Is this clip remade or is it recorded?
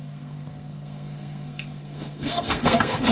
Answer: remade